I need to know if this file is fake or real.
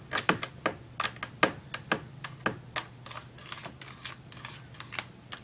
real